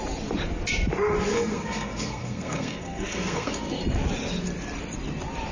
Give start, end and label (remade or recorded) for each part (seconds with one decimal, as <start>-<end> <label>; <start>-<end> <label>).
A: 0.0-1.3 recorded; 1.3-3.8 remade; 3.8-5.5 recorded